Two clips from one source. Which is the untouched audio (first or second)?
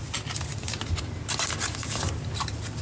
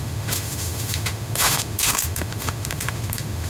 first